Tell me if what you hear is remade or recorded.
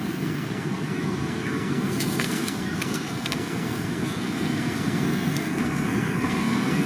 remade